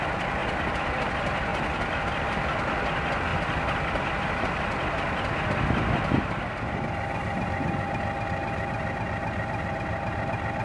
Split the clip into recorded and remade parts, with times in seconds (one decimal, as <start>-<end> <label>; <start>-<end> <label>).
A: 0.0-0.4 recorded; 0.4-1.1 remade; 1.1-10.6 recorded